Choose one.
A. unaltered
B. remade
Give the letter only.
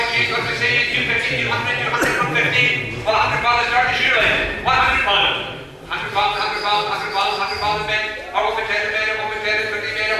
A